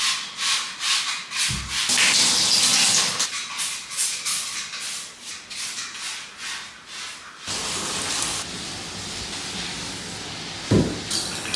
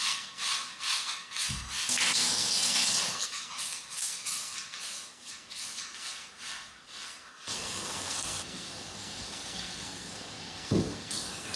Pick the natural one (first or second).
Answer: first